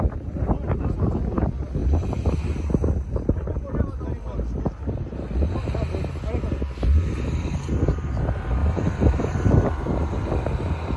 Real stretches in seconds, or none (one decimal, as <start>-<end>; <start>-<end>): 0.0-8.6; 9.2-11.0